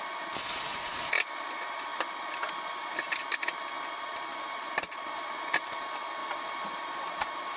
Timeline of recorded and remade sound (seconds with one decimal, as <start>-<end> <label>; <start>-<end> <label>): 0.0-4.3 recorded; 4.3-5.4 remade; 5.4-6.2 recorded; 6.2-7.6 remade